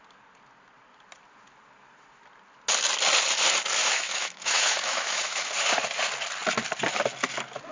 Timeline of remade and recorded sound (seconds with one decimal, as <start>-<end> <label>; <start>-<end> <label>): 0.0-3.8 recorded; 3.8-5.5 remade; 5.5-7.7 recorded